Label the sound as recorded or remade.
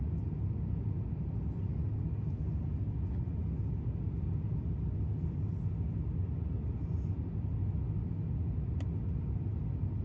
recorded